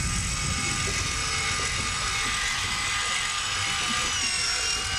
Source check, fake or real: real